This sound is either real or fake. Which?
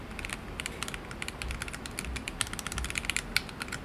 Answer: real